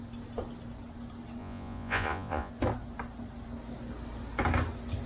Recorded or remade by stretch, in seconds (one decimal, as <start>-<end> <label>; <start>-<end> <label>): 0.0-1.4 recorded; 1.4-2.5 remade; 2.5-5.1 recorded